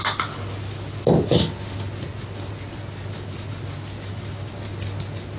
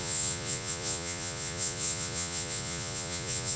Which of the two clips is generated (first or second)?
second